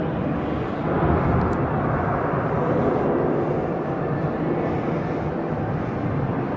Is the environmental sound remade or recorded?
recorded